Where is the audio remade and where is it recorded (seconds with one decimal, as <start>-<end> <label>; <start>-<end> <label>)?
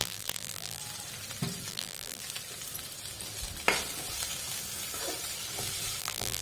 0.0-0.8 remade; 0.8-1.7 recorded; 1.7-2.2 remade; 2.2-6.0 recorded; 6.0-6.4 remade